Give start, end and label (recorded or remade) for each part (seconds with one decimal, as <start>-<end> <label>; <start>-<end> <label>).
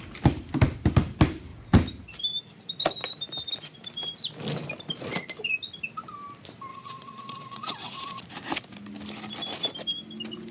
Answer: 0.0-6.7 recorded; 6.7-8.2 remade; 8.2-10.5 recorded